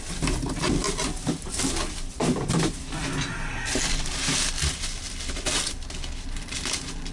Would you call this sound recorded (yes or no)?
yes